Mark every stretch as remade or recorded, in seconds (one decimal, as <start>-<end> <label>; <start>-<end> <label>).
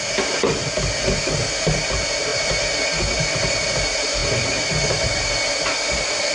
0.0-6.3 recorded